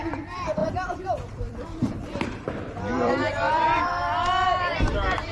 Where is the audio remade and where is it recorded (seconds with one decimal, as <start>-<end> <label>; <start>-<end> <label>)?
0.0-5.3 remade